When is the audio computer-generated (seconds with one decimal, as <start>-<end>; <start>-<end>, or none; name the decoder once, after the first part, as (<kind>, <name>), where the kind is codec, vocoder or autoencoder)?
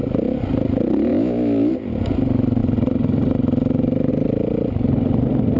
1.1-1.7 (autoencoder, DAC-VAE)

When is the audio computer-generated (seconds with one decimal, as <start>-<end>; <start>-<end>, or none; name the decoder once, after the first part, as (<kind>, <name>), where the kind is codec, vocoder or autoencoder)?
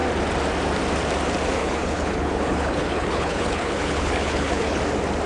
1.6-4.8 (codec, HILCodec)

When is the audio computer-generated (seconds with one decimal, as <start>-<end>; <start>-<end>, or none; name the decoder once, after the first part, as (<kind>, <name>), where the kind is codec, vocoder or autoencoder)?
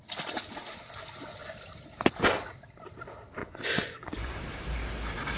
3.4-4.4 (vocoder, Vocos)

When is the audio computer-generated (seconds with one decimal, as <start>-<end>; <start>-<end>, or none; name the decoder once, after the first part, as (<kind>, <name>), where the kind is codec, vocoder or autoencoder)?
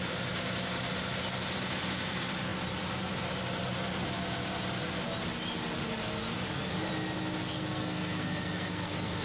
7.4-9.2 (codec, SNAC)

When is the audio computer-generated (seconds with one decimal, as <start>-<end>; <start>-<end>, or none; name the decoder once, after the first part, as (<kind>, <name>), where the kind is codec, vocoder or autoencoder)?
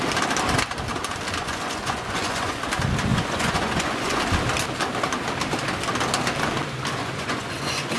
1.4-2.6 (vocoder, Vocos); 3.1-4.2; 7.0-8.0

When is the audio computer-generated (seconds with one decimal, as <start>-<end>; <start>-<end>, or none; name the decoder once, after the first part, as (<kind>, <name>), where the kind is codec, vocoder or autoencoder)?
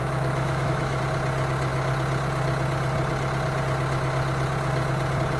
0.0-1.0 (autoencoder, DAC-VAE)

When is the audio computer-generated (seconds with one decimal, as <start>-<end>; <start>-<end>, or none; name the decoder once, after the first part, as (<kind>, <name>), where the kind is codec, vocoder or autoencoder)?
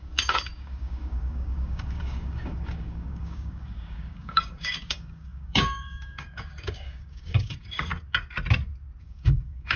0.0-7.9 (codec, DAC); 9.0-9.8